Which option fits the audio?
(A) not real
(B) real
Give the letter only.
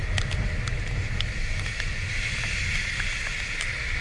B